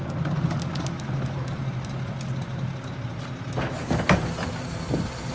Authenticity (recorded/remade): recorded